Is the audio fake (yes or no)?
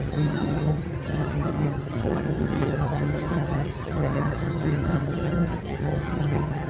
yes